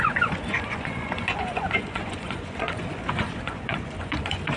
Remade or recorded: remade